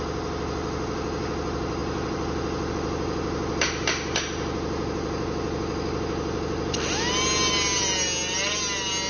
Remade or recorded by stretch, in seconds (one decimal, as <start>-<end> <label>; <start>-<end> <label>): 0.0-9.1 recorded